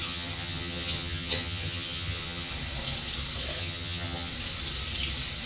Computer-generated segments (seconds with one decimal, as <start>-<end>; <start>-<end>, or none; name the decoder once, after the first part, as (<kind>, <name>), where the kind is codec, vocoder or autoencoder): 0.0-2.5 (vocoder, HiFi-GAN); 3.6-4.3